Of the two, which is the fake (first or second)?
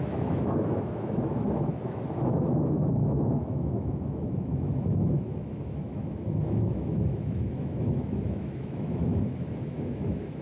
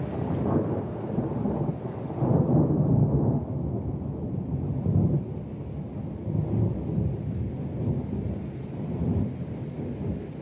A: first